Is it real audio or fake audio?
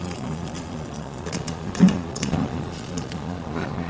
fake